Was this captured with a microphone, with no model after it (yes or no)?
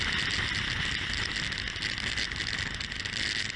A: yes